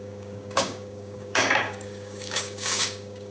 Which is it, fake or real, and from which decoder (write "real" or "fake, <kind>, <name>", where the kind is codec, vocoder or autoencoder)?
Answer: fake, codec, DAC